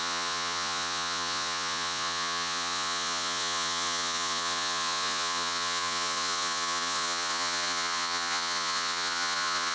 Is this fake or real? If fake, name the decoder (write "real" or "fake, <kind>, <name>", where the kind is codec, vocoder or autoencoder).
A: fake, vocoder, Vocos